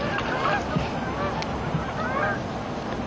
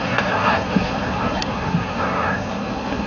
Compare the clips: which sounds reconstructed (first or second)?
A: second